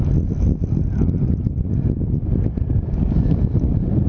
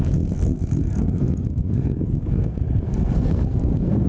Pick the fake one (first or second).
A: second